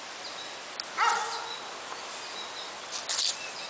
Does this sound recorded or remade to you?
recorded